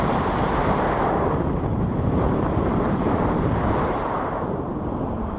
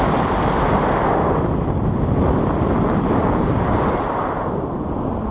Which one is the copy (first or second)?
first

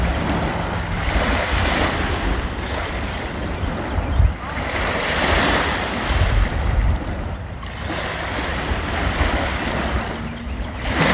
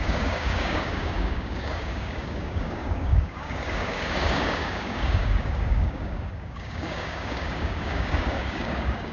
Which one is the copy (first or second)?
second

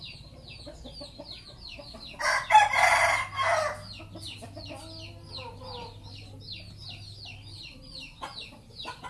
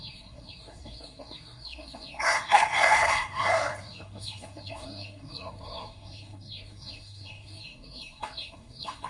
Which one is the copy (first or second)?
second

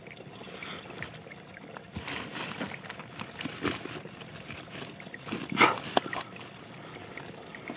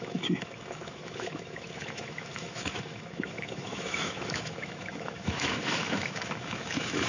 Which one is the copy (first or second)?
second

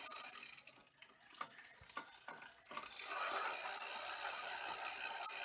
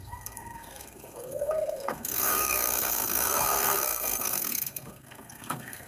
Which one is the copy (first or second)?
second